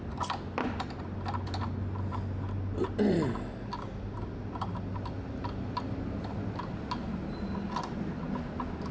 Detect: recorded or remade recorded